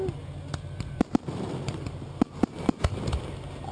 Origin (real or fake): real